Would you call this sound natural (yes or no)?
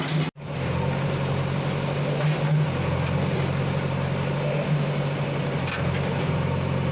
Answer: yes